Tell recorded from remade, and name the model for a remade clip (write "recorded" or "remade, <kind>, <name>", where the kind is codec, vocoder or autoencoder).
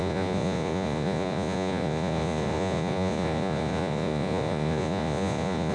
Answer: remade, vocoder, Vocos